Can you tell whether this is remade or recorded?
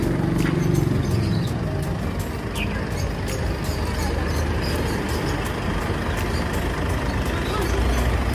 recorded